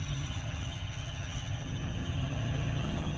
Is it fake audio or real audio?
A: fake